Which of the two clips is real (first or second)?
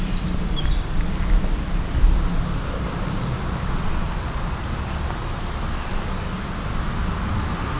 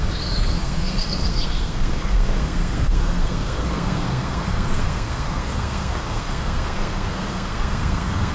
first